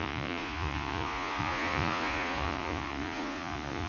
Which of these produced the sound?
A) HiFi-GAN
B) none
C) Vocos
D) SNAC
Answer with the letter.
C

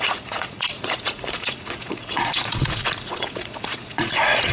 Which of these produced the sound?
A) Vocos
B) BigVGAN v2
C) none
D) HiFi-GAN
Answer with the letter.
A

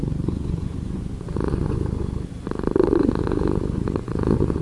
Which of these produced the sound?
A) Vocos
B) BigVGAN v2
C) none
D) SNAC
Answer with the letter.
A